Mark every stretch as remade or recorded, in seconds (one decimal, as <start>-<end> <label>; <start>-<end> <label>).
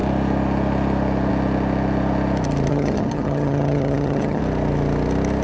0.0-2.7 recorded; 2.7-4.4 remade; 4.4-5.4 recorded